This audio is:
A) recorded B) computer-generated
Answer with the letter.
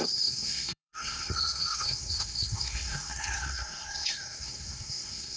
B